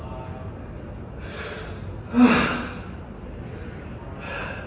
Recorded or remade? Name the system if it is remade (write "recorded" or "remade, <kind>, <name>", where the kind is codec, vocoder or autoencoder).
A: recorded